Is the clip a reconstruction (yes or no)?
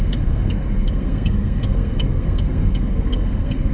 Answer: yes